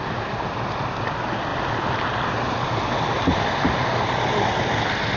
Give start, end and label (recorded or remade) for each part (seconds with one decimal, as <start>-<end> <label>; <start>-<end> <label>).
0.0-5.2 recorded